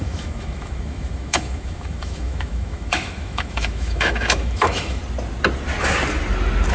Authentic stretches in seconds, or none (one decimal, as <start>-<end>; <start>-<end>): 5.0-6.7